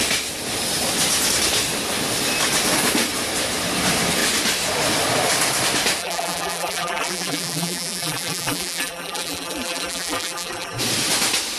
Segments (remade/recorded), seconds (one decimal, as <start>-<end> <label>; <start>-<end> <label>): 0.0-6.0 recorded; 6.0-10.8 remade; 10.8-11.6 recorded